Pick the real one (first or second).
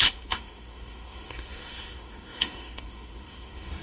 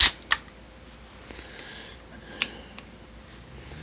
second